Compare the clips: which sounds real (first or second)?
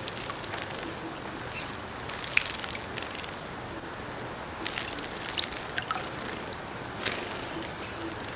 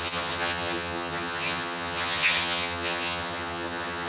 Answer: first